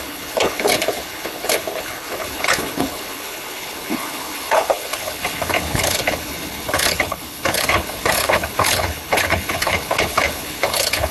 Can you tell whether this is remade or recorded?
remade